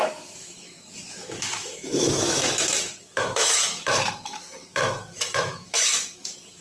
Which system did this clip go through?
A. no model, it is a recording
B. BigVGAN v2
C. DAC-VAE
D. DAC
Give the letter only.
C